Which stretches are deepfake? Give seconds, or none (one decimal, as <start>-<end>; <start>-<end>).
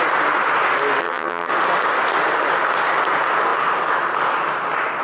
1.0-1.5